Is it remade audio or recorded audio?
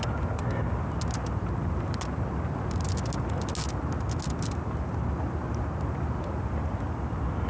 recorded